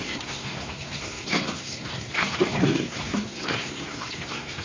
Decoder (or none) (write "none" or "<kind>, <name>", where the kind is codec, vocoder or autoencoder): codec, SNAC